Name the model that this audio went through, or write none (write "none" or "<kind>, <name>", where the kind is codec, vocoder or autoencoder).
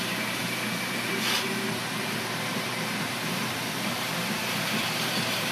vocoder, BigVGAN v2